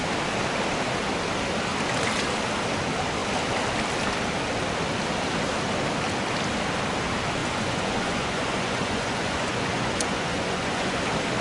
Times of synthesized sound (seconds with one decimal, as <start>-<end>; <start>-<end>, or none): 7.4-11.0